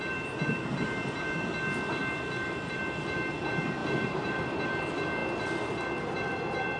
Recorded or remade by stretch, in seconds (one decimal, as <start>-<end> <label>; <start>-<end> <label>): 0.0-3.8 recorded; 3.8-4.4 remade; 4.4-6.8 recorded